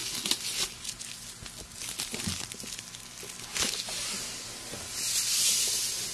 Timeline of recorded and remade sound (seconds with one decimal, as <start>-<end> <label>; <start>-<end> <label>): 0.0-6.1 recorded